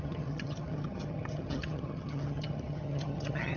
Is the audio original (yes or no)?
no